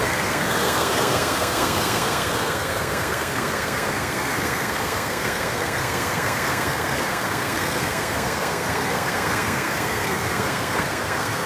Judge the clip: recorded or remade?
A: remade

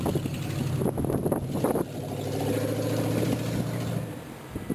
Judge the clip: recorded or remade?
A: recorded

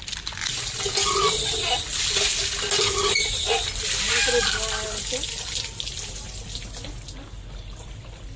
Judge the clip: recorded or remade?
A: recorded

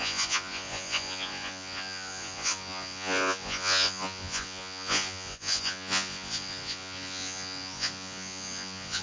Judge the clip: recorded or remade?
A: remade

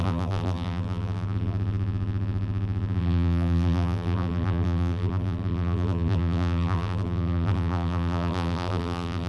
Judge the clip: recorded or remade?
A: remade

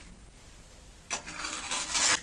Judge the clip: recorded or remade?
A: recorded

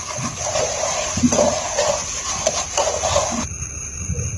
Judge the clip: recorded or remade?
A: recorded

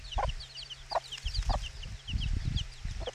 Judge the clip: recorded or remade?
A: recorded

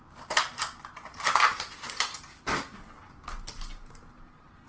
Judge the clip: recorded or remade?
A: recorded